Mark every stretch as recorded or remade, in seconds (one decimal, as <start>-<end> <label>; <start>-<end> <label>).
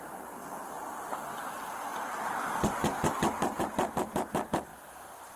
0.0-5.4 recorded